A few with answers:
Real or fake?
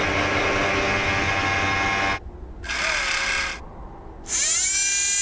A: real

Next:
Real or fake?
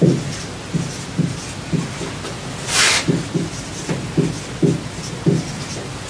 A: real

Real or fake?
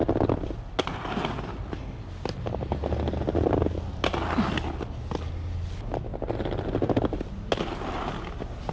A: real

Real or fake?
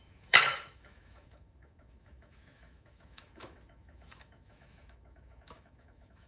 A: fake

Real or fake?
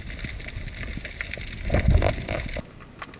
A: real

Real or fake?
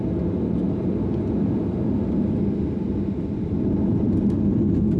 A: real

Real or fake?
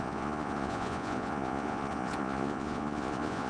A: fake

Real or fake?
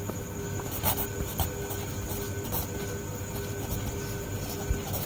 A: real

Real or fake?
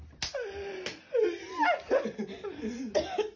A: real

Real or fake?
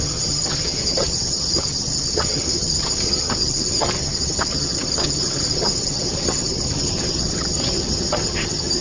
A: fake